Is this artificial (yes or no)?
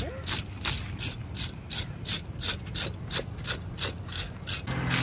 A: no